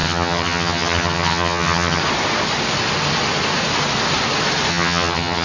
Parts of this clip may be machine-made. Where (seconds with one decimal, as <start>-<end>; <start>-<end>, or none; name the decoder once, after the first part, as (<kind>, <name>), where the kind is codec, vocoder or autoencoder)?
0.0-2.0 (vocoder, HiFi-GAN); 4.7-5.4

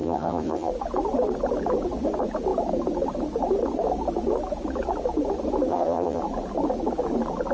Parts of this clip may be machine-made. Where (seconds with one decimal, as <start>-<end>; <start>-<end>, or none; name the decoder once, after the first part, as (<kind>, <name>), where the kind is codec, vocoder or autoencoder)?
0.0-0.7 (vocoder, HiFi-GAN); 5.7-6.2